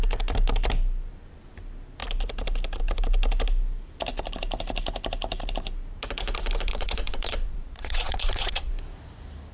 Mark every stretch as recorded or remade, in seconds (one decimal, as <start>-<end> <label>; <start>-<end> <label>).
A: 0.0-6.7 recorded; 6.7-8.7 remade; 8.7-9.5 recorded